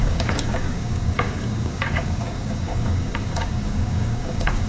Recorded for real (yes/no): no